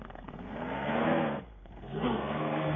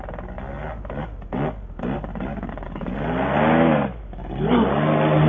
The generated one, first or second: first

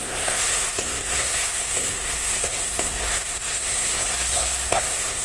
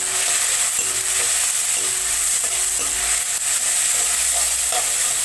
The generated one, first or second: first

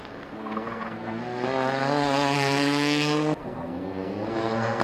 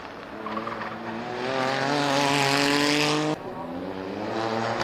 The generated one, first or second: first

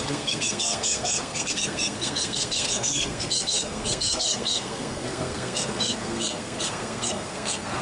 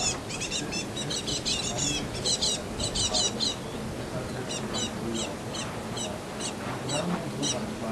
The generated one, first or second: first